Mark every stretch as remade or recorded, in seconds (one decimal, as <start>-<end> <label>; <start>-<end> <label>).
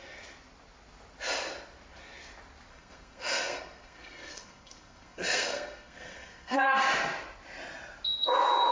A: 0.0-2.7 recorded; 2.7-6.8 remade; 6.8-8.7 recorded